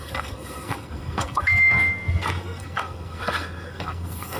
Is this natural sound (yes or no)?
no